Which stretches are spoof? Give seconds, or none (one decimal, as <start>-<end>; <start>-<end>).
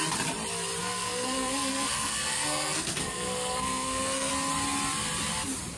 0.8-4.3